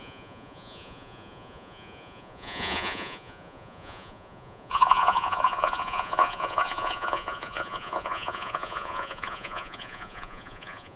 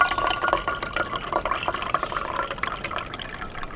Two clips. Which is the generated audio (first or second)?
first